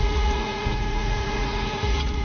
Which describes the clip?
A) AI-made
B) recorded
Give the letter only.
A